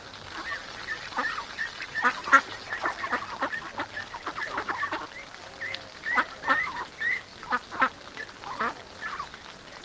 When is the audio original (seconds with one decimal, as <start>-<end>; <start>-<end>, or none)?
0.0-9.8